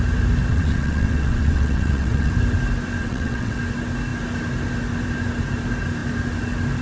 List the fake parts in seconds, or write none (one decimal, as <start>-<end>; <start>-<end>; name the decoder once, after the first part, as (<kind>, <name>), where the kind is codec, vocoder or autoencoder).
0.5-2.3 (vocoder, WaveNeXt); 3.0-3.6